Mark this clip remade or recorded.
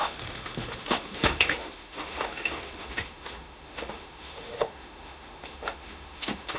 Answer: remade